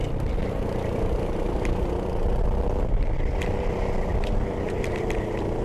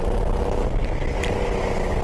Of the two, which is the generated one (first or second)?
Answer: first